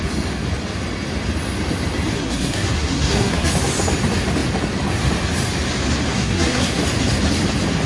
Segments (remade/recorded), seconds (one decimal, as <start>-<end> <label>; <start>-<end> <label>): 0.0-2.1 recorded; 2.1-3.5 remade; 3.5-6.1 recorded; 6.1-6.8 remade; 6.8-7.9 recorded